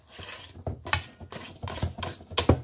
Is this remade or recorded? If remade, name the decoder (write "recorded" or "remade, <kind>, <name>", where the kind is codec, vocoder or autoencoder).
recorded